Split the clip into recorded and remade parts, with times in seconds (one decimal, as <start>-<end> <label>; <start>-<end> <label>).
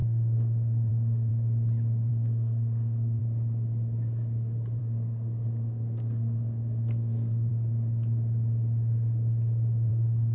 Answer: 0.0-1.3 remade; 1.3-2.1 recorded; 2.1-3.2 remade; 3.2-4.8 recorded; 4.8-7.5 remade; 7.5-9.9 recorded; 9.9-10.3 remade